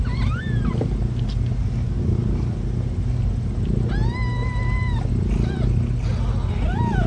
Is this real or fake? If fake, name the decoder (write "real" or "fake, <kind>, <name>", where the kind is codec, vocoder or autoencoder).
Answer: real